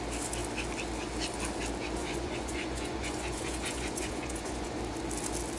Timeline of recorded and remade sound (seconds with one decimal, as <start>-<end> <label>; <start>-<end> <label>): 0.0-2.0 recorded; 2.0-4.8 remade; 4.8-5.6 recorded